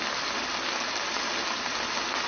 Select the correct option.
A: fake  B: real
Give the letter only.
B